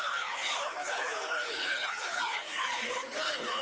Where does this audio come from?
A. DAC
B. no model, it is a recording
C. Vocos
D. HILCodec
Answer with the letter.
D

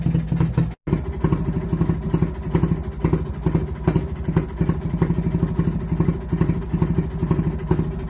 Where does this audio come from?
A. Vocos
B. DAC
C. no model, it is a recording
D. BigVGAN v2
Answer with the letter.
C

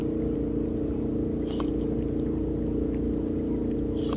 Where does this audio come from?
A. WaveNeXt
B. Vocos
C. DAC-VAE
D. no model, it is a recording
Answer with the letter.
D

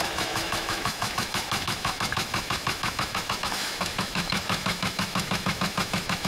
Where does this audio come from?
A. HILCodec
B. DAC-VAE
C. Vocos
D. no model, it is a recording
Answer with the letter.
B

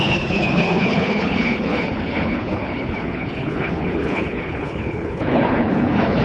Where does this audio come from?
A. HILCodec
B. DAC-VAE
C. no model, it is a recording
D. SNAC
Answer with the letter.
A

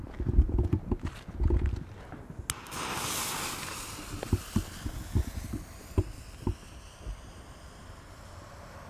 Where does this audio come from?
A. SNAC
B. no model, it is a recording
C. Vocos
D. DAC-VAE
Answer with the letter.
B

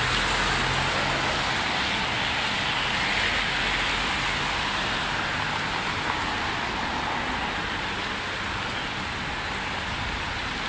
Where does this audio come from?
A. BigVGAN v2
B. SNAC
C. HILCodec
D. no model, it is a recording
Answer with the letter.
D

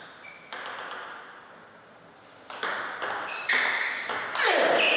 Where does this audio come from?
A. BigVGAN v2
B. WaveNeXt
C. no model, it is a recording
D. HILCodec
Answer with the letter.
C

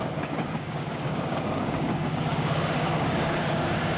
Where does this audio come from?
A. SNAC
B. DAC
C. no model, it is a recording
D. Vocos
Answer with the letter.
B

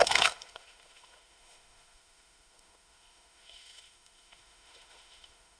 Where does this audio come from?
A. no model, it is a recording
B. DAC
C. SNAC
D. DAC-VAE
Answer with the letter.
D